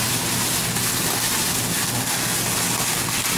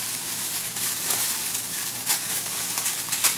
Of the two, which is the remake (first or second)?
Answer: second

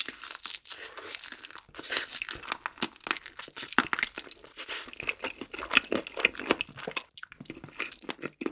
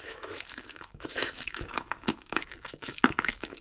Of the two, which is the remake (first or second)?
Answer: second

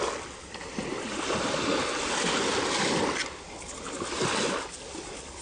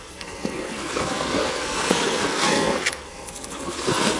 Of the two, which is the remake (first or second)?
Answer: second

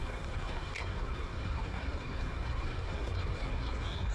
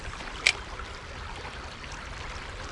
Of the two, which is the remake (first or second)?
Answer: first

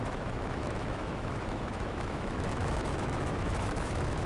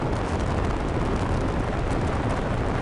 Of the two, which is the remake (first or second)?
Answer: first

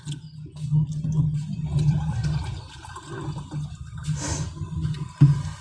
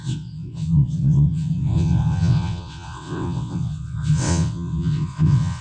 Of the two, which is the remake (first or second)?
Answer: second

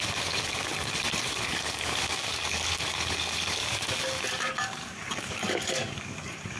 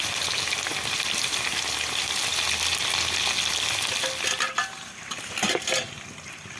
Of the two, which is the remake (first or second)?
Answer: first